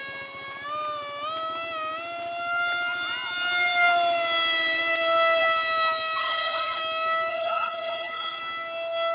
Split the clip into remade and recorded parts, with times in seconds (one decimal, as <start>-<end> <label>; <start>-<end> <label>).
0.0-6.2 recorded; 6.2-6.8 remade; 6.8-7.3 recorded; 7.3-8.4 remade; 8.4-9.1 recorded

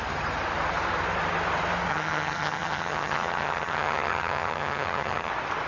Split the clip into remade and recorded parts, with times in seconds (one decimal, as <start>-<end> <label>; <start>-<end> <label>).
0.0-1.9 recorded; 1.9-5.3 remade; 5.3-5.7 recorded